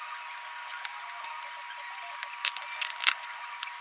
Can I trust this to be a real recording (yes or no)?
yes